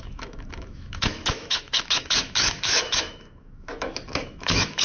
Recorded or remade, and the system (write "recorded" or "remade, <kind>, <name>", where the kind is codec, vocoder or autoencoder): remade, autoencoder, DAC-VAE